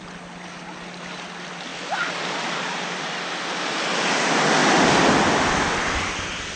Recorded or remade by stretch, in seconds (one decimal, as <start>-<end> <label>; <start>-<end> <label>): 0.0-6.6 recorded